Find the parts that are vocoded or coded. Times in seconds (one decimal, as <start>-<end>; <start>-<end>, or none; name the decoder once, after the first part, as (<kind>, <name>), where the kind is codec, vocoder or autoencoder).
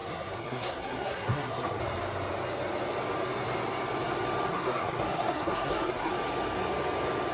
0.0-1.8 (codec, SNAC); 4.5-6.1